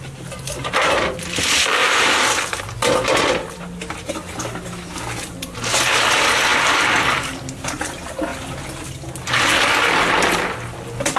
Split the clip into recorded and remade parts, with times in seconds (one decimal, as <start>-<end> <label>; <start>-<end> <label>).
0.0-1.8 recorded; 1.8-2.6 remade; 2.6-6.5 recorded; 6.5-7.4 remade; 7.4-11.2 recorded